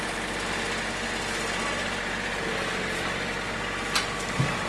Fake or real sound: real